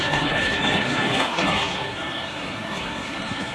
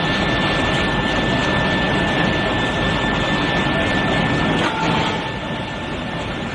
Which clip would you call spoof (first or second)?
first